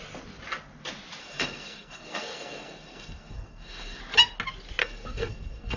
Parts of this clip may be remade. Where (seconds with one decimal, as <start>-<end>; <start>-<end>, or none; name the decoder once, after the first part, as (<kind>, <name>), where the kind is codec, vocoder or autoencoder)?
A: 1.2-4.0 (codec, SNAC); 4.8-5.8